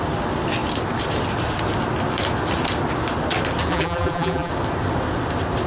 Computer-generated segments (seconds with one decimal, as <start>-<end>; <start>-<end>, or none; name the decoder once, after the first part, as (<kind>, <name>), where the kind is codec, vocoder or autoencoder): 3.7-4.5 (vocoder, BigVGAN v2)

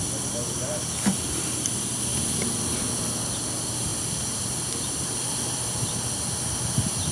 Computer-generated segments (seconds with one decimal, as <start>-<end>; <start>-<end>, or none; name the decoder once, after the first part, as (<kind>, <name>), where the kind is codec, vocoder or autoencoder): 3.9-5.7 (vocoder, BigVGAN v2)